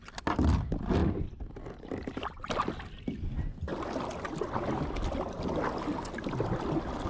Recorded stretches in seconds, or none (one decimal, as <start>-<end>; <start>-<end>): 0.0-7.1